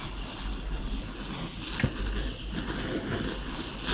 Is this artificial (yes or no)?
no